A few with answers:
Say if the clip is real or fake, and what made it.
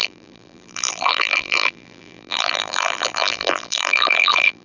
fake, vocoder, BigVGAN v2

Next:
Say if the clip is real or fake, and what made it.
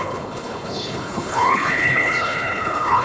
fake, codec, HILCodec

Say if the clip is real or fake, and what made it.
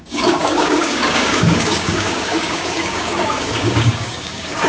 fake, codec, DAC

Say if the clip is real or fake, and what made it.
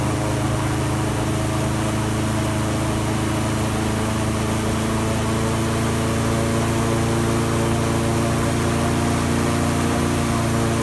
real